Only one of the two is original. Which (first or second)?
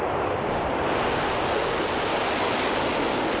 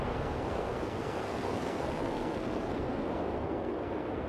first